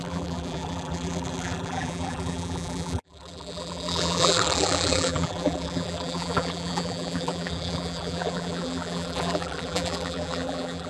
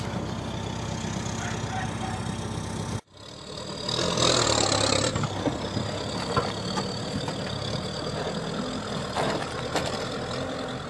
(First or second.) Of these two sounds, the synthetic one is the first